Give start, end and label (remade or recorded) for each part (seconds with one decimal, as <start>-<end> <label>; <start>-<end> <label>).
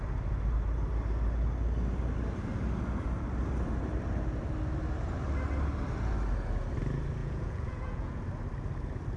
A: 0.0-7.2 recorded; 7.2-8.2 remade; 8.2-9.2 recorded